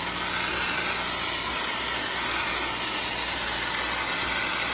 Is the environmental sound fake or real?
real